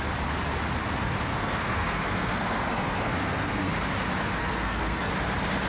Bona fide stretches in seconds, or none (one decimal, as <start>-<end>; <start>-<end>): 0.0-1.3; 3.7-4.4; 5.1-5.7